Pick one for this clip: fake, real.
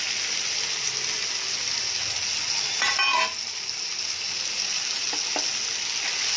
real